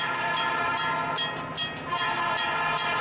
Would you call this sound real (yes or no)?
yes